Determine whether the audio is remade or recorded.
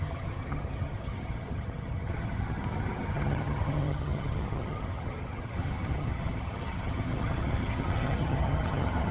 remade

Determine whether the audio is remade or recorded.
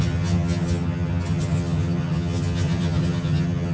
remade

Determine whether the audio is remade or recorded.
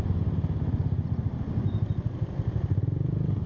recorded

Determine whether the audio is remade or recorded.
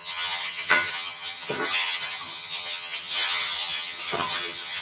remade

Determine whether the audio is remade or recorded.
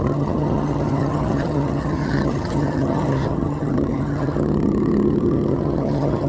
remade